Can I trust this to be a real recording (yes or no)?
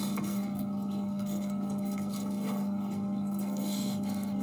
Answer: no